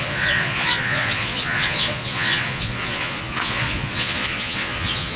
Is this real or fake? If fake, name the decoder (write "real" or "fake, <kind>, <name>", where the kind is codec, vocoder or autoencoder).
fake, vocoder, Vocos